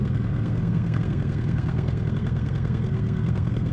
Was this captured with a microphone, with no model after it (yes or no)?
no